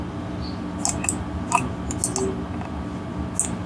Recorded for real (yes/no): yes